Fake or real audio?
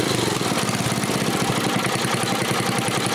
real